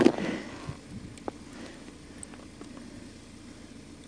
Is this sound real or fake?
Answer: real